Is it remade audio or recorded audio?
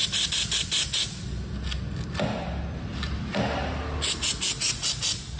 recorded